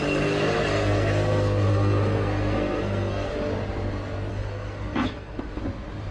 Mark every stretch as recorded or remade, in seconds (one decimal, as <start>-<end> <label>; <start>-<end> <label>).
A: 0.0-0.7 recorded; 0.7-3.3 remade; 3.3-4.3 recorded; 4.3-5.6 remade; 5.6-6.1 recorded